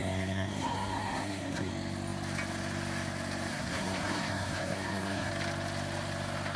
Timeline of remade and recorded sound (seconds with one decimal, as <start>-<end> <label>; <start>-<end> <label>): 0.0-1.7 remade; 1.7-3.5 recorded; 3.5-5.3 remade; 5.3-6.6 recorded